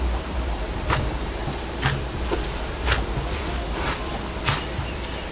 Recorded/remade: remade